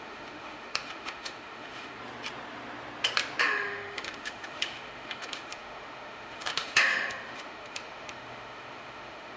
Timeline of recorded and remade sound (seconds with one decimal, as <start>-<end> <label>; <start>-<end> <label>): 0.0-2.0 remade; 2.0-3.4 recorded; 3.4-9.4 remade